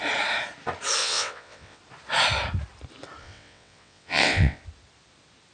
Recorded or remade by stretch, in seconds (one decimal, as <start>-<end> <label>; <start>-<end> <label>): 0.0-1.0 recorded; 1.0-1.8 remade; 1.8-3.2 recorded; 3.2-4.6 remade; 4.6-5.5 recorded